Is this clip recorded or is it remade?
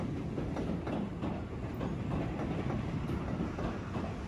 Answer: recorded